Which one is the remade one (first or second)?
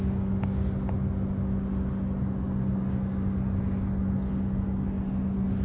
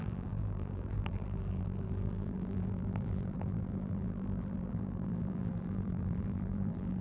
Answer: second